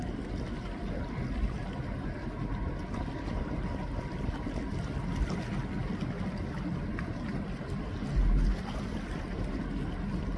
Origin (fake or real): real